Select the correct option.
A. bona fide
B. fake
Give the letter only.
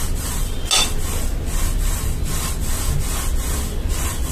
A